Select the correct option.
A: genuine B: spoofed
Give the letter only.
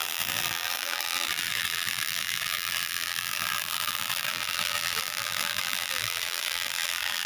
B